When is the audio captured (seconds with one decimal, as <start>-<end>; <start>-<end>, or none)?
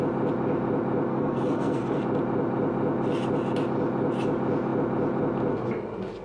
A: 0.0-1.1; 2.0-6.2